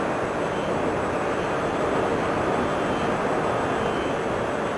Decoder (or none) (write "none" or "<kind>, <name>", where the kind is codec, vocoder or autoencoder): none